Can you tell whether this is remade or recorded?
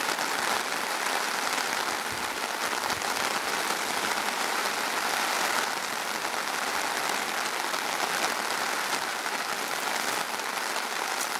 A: recorded